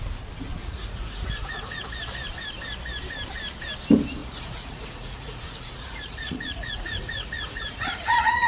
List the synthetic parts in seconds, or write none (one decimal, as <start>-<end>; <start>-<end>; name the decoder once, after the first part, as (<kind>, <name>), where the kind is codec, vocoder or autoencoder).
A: 0.6-1.8 (vocoder, Vocos); 4.2-8.5